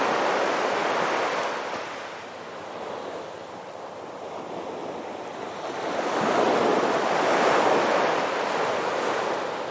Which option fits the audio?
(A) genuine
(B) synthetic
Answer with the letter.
A